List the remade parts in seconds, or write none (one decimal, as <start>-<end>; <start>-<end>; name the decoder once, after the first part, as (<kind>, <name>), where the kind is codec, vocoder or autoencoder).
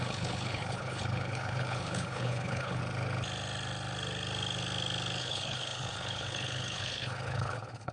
0.0-2.8 (codec, HILCodec); 5.2-7.9